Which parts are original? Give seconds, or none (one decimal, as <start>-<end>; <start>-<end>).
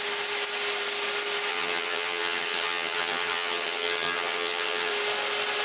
0.0-1.5; 4.9-5.6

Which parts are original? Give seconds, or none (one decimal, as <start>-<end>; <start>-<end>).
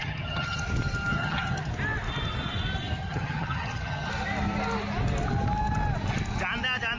0.6-1.1; 1.7-3.0; 4.1-7.0